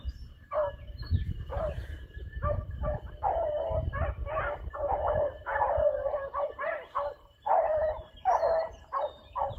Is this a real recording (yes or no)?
no